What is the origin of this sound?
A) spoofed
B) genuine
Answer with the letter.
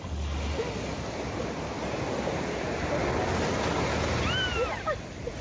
B